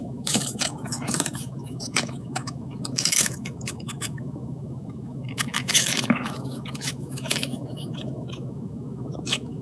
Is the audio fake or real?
fake